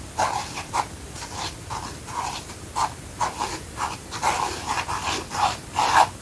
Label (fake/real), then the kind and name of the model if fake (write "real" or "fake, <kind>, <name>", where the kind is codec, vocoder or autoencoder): real